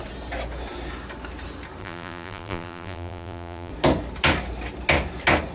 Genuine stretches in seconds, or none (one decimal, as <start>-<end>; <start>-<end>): 0.0-1.8; 3.7-5.5